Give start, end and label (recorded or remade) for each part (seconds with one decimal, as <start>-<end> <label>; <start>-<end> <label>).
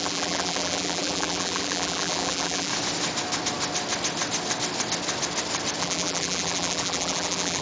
0.0-2.7 remade; 2.7-5.8 recorded; 5.8-7.6 remade